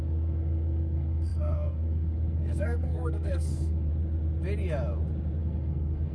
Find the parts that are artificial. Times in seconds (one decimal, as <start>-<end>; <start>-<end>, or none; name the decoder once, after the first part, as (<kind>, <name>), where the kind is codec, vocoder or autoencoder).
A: 0.0-3.9 (codec, SNAC); 5.4-6.1